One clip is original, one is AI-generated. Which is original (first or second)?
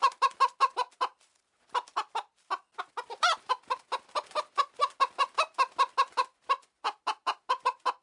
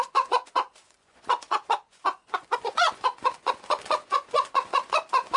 first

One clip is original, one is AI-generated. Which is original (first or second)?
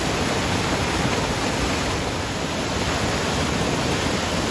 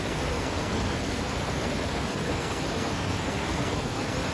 first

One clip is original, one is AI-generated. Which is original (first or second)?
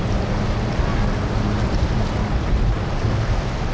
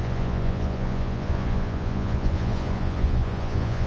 first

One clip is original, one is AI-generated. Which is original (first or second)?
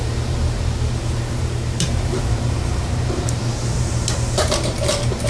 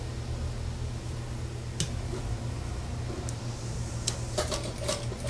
second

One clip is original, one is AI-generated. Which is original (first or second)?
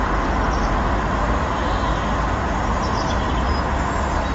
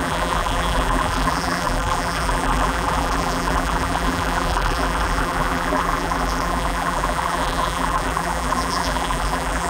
first